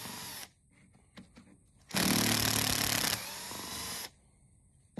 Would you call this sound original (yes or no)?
yes